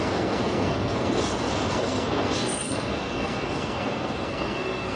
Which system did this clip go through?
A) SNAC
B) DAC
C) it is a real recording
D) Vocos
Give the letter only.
A